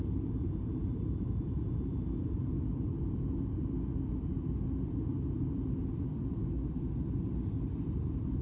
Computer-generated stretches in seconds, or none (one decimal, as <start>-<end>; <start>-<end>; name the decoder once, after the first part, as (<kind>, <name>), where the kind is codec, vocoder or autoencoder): 0.0-2.4 (vocoder, BigVGAN v2); 6.9-8.4